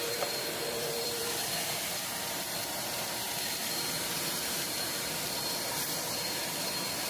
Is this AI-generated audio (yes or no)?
yes